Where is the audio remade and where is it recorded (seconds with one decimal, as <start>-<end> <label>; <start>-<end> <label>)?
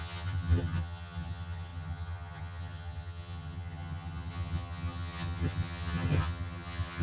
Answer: 0.0-7.0 remade